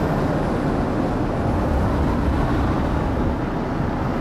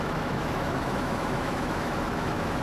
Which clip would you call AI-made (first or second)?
second